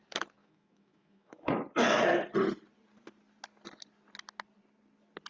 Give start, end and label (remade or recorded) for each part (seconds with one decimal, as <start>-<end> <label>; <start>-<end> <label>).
0.0-0.4 recorded; 0.4-1.5 remade; 1.5-5.3 recorded